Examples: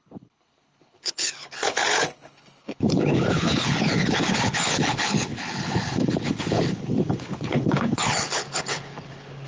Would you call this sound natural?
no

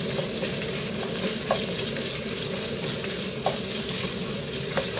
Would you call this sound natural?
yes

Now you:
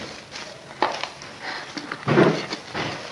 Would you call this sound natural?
yes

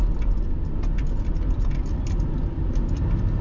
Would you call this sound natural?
yes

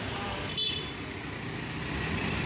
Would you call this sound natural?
yes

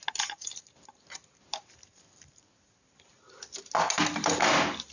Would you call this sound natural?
yes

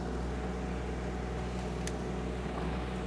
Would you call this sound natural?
yes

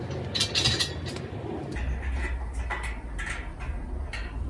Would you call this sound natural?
yes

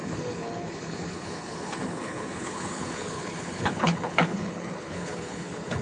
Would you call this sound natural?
no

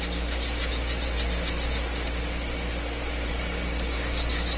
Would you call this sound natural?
yes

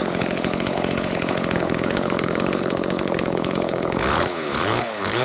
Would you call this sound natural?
no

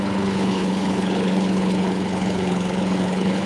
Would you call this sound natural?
no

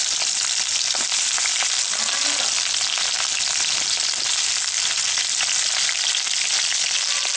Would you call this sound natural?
yes